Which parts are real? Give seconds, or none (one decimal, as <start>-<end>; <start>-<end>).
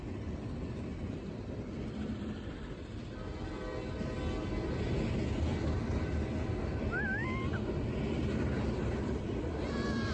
0.9-1.7; 3.3-8.4